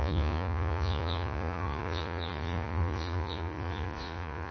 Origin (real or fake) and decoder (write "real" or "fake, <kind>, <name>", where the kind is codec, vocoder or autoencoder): fake, vocoder, Vocos